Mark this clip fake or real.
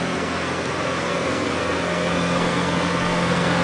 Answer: fake